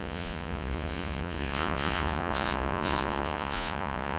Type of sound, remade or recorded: remade